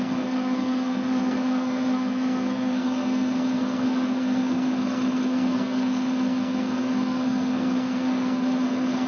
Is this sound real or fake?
fake